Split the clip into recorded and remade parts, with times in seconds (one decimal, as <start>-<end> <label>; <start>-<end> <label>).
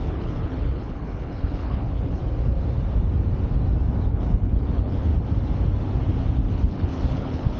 0.0-2.2 remade; 2.2-4.1 recorded; 4.1-5.1 remade; 5.1-6.5 recorded; 6.5-7.6 remade